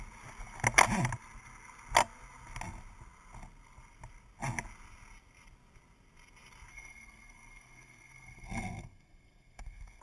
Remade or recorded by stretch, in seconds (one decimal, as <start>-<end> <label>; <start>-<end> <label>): 0.0-6.7 recorded; 6.7-10.0 remade